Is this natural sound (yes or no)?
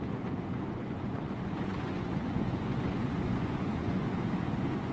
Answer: no